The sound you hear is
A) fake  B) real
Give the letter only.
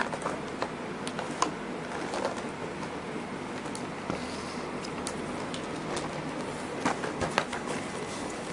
B